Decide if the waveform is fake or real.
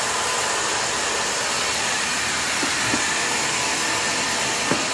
real